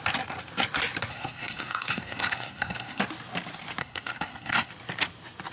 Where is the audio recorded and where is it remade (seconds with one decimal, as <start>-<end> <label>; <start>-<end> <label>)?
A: 0.0-1.1 recorded; 1.1-3.0 remade; 3.0-3.8 recorded; 3.8-4.7 remade; 4.7-5.5 recorded